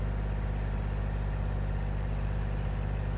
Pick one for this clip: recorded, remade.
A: recorded